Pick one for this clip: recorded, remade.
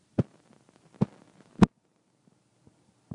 recorded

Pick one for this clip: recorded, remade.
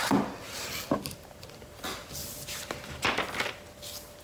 recorded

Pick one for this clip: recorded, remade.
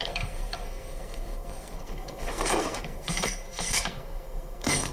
remade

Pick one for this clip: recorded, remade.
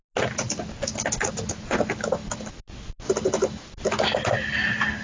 recorded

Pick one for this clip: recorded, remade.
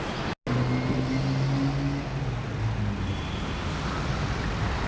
recorded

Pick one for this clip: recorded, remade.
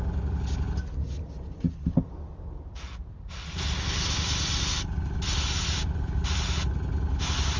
recorded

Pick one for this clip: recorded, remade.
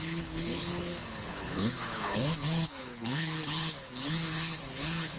remade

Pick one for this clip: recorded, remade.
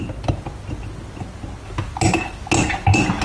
recorded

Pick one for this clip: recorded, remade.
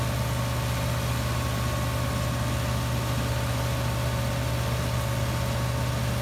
recorded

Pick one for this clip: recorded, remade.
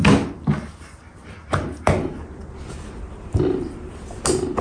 recorded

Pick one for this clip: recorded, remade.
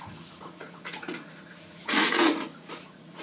remade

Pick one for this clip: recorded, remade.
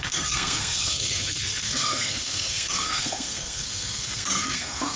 remade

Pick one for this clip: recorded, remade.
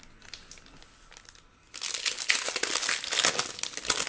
recorded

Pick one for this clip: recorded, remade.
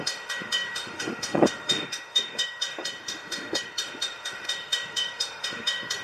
remade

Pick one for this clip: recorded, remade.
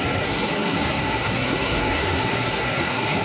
remade